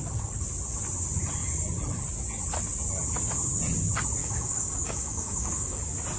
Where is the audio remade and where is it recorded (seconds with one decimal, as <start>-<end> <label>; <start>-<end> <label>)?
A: 0.0-4.2 recorded; 4.2-5.8 remade; 5.8-6.2 recorded